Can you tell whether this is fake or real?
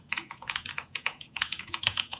fake